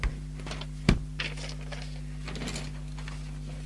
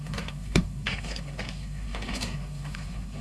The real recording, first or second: first